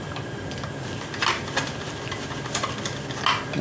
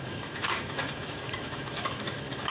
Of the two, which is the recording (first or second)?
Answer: first